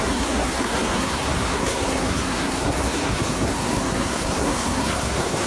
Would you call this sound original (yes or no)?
no